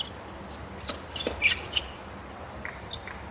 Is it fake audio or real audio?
real